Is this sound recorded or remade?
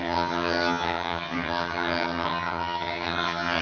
remade